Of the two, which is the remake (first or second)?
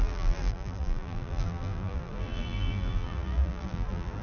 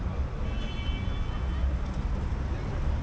first